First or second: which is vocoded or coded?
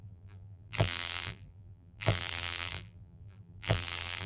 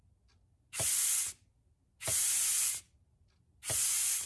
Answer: first